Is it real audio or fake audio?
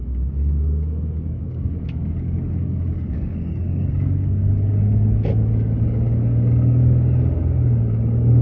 fake